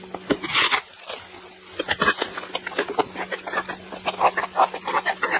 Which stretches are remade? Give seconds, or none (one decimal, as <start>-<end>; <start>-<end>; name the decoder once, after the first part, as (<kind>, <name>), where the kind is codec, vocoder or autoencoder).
none